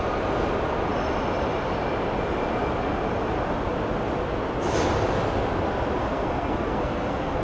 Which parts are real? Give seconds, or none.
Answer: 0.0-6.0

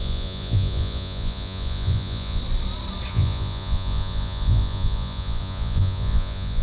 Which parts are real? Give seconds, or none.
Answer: 2.4-3.1

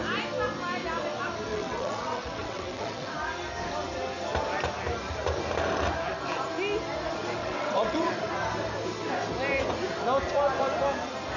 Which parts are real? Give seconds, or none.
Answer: 0.0-1.5; 3.1-7.4; 8.1-11.4

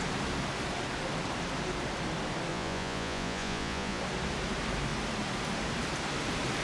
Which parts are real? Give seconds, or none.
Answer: 0.0-2.5; 4.0-6.6

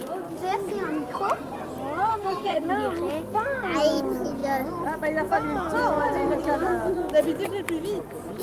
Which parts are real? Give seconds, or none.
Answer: 0.0-2.1; 2.7-8.4

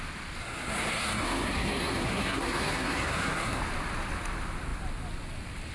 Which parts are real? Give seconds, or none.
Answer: 0.0-0.4; 3.6-5.7